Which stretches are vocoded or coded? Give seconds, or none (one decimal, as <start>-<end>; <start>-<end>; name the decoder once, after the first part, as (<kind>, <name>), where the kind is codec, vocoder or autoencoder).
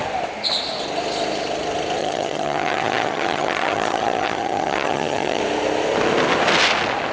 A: 2.0-5.4 (vocoder, HiFi-GAN)